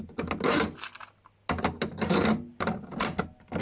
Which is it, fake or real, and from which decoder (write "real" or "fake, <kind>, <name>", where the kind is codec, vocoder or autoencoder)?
real